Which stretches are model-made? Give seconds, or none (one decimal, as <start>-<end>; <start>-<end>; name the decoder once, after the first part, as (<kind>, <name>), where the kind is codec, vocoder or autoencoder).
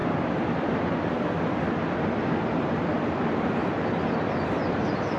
none